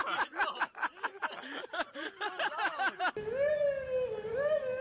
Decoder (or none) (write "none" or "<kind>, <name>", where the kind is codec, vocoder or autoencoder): none